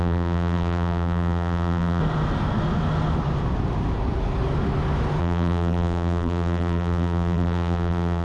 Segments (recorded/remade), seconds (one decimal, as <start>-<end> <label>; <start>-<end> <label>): 0.0-2.0 remade; 2.0-5.2 recorded; 5.2-8.2 remade

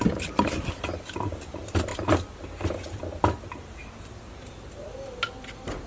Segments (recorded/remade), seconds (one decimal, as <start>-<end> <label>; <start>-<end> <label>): 0.0-5.9 recorded

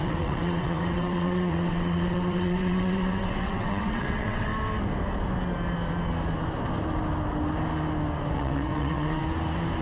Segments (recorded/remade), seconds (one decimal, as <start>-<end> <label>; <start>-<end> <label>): 0.0-4.5 remade; 4.5-8.3 recorded; 8.3-9.2 remade; 9.2-9.8 recorded

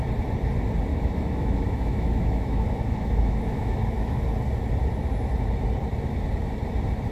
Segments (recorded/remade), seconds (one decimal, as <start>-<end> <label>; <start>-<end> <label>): 0.0-0.9 recorded; 0.9-4.2 remade; 4.2-7.1 recorded

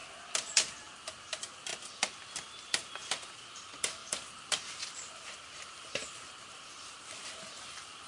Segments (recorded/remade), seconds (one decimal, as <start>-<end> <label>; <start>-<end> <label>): 0.0-0.5 recorded; 0.5-1.7 remade; 1.7-2.4 recorded; 2.4-3.0 remade; 3.0-3.5 recorded; 3.5-8.1 remade

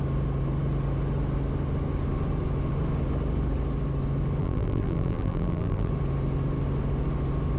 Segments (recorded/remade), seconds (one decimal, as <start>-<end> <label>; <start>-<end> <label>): 0.0-4.4 recorded; 4.4-5.9 remade; 5.9-7.6 recorded

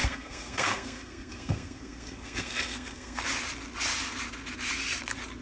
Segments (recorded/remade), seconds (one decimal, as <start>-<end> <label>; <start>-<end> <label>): 0.0-3.2 remade; 3.2-5.4 recorded

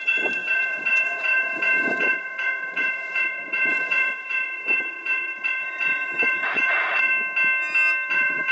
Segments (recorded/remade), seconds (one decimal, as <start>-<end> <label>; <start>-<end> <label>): 0.0-7.1 remade; 7.1-8.1 recorded; 8.1-8.5 remade